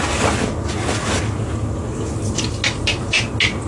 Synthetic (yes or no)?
no